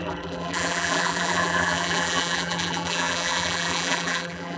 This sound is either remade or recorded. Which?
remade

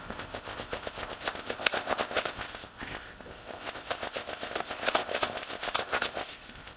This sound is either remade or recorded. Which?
remade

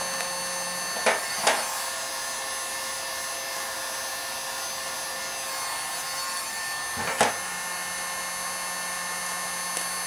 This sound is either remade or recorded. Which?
recorded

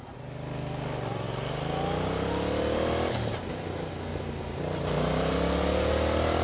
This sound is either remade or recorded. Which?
recorded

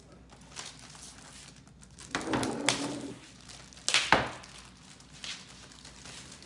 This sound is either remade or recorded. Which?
recorded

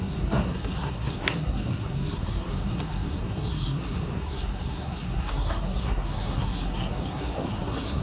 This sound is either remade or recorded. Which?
remade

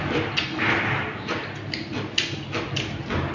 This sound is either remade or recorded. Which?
recorded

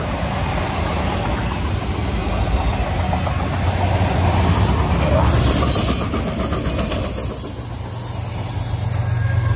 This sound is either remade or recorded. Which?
recorded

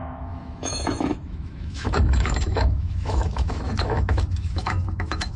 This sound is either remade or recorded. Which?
remade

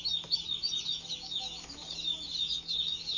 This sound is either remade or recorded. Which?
remade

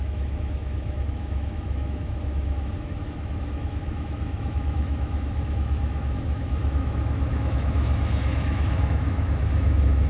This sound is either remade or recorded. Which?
remade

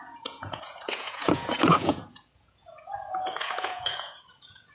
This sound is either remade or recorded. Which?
remade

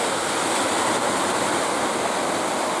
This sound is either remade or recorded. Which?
recorded